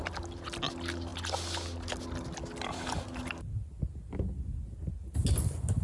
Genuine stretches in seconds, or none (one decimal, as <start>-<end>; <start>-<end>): 0.0-5.8

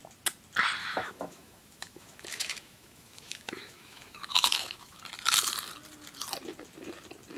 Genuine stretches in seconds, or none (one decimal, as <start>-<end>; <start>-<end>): 0.0-0.8; 5.0-7.4

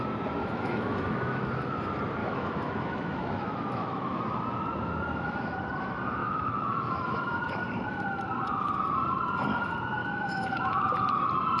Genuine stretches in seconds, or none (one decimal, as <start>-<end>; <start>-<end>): 0.0-0.4; 1.5-2.2; 4.2-6.2; 7.4-10.0; 10.8-11.6